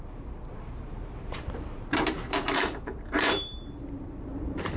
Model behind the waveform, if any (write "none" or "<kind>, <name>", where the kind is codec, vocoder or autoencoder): vocoder, BigVGAN v2